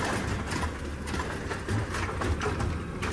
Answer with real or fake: real